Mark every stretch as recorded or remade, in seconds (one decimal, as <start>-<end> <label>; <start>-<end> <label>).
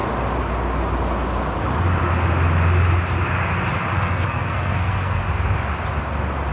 0.0-3.9 recorded; 3.9-5.2 remade; 5.2-6.5 recorded